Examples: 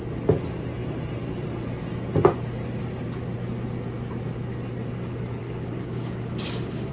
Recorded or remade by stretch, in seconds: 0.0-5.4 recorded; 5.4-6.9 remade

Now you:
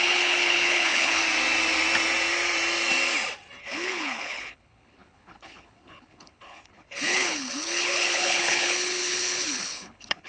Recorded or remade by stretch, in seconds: 0.0-1.2 remade; 1.2-3.6 recorded; 3.6-10.3 remade

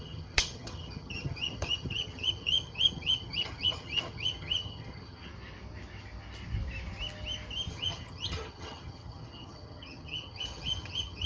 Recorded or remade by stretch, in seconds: 0.0-5.3 remade; 5.3-7.7 recorded; 7.7-11.3 remade